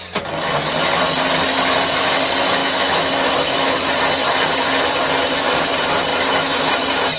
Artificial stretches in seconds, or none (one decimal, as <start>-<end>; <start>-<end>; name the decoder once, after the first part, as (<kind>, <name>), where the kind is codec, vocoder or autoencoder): 2.6-3.7 (autoencoder, DAC-VAE); 6.1-6.7